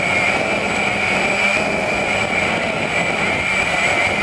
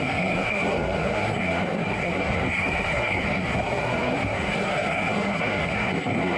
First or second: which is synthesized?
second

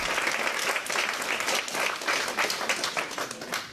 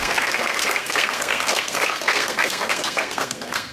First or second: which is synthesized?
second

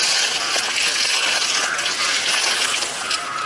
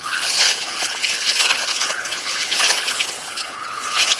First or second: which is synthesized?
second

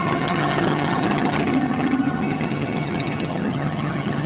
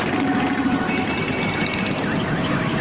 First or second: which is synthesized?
first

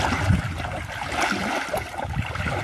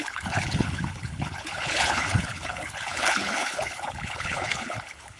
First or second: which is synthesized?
second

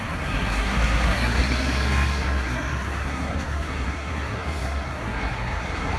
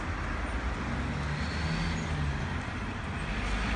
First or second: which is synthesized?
first